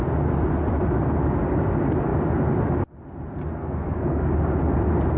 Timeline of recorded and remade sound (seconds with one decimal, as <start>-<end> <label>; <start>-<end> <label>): 0.0-3.6 recorded; 3.6-4.2 remade; 4.2-5.2 recorded